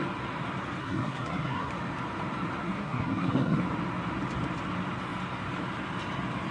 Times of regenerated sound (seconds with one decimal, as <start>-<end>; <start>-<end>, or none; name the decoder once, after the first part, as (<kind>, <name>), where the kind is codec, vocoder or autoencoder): 0.8-1.7 (codec, SNAC); 2.6-3.6